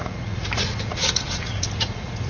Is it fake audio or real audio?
fake